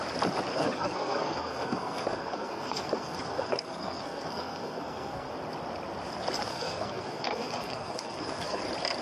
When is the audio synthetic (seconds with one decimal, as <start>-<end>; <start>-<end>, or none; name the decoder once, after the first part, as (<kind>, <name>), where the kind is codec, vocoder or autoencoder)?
0.5-5.3 (codec, SNAC); 6.5-8.6